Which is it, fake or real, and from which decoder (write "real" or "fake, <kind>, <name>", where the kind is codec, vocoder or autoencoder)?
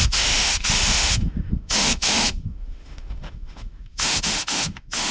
fake, autoencoder, DAC-VAE